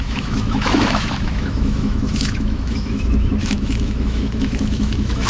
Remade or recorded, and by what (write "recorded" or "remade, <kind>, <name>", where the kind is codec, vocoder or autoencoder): remade, autoencoder, DAC-VAE